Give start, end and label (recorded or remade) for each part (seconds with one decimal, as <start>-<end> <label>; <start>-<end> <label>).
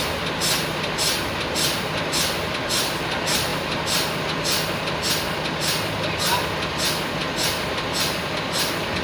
0.0-9.0 recorded